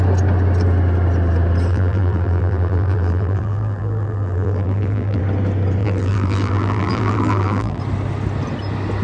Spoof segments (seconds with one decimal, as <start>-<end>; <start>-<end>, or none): 1.7-5.2; 5.8-7.8